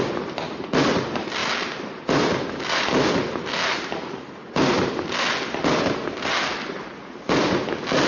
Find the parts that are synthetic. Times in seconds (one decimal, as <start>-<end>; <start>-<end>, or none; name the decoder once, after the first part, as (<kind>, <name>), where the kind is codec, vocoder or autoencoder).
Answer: none